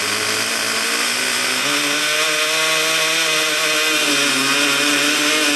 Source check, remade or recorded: recorded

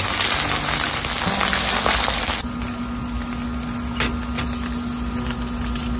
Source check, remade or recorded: recorded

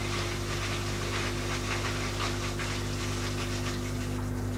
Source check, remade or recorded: recorded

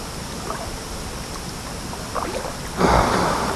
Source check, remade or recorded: recorded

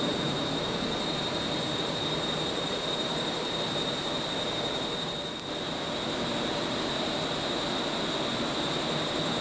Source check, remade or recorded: recorded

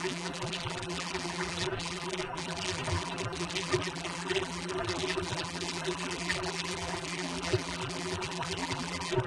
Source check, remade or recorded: remade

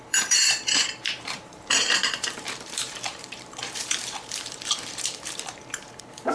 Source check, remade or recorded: remade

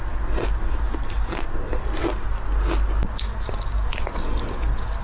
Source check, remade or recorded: recorded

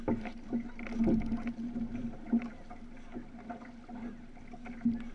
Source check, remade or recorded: recorded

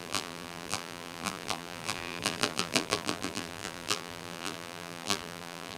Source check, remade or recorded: remade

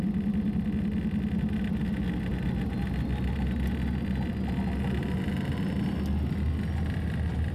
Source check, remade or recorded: recorded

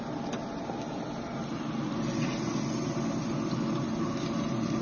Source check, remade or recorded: recorded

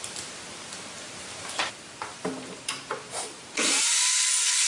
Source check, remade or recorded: remade